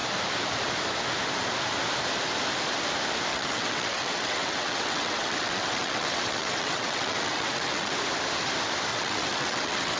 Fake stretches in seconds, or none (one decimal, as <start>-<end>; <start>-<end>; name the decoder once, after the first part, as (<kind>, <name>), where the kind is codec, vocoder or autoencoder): 3.3-7.9 (vocoder, WaveNeXt); 8.9-10.0